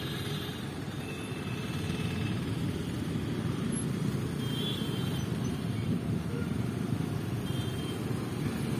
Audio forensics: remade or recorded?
remade